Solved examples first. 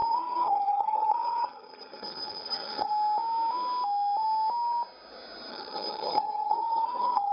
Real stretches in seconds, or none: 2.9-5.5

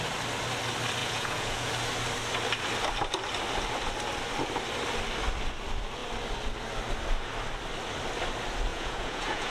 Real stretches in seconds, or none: 0.0-1.0; 1.7-8.7

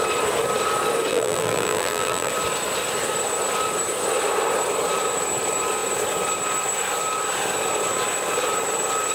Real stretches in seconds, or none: 0.0-1.1; 2.3-9.1

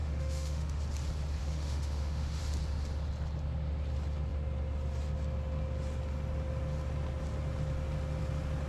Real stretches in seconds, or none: 0.8-1.4; 2.4-8.7

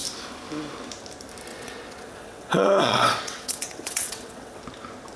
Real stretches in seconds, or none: 0.0-1.5; 4.6-5.2

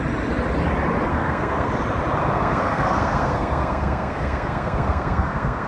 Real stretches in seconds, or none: 0.0-1.1; 1.7-2.2

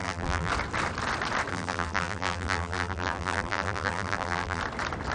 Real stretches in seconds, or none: 0.5-1.5; 4.6-5.1